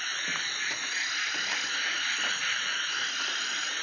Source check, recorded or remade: recorded